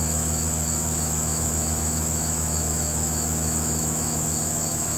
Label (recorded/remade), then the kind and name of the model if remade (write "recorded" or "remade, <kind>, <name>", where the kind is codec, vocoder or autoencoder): remade, autoencoder, DAC-VAE